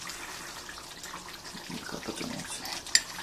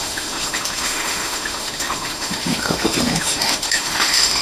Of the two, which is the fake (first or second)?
second